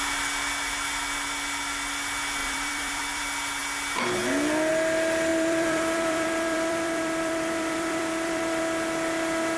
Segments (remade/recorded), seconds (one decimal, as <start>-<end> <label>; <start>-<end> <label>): 0.0-2.4 recorded; 2.4-3.2 remade; 3.2-5.3 recorded; 5.3-8.6 remade; 8.6-9.6 recorded